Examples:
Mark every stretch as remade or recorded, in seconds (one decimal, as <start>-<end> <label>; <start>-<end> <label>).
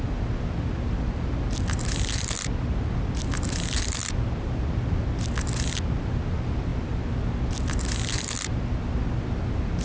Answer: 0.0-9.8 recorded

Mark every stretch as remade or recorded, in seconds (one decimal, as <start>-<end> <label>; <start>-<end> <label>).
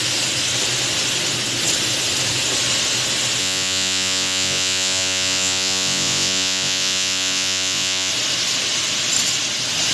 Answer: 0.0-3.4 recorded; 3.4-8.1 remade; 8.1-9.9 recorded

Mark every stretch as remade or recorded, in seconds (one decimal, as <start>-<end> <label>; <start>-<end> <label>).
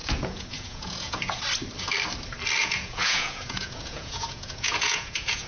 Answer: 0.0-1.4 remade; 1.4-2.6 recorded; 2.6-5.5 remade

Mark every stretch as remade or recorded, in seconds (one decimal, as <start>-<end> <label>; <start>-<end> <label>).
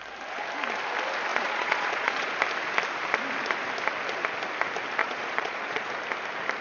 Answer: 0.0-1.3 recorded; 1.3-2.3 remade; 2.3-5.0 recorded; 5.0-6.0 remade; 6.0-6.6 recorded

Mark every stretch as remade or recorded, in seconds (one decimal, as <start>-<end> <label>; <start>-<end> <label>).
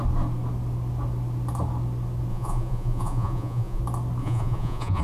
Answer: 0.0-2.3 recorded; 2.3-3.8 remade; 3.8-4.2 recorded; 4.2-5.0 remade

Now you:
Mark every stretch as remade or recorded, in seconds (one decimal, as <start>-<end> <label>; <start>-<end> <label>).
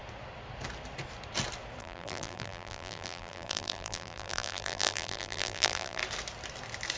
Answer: 0.0-1.8 recorded; 1.8-6.0 remade; 6.0-7.0 recorded